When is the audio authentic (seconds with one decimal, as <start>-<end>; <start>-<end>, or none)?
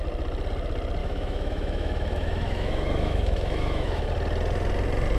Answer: 0.0-1.0; 4.1-5.2